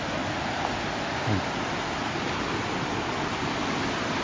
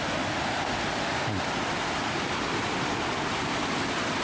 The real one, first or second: first